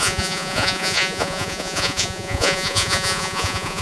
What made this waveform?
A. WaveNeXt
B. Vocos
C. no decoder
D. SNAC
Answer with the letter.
B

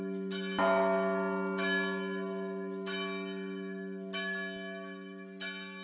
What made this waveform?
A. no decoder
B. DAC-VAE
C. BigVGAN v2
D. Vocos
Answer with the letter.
A